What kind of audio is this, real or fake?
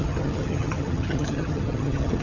fake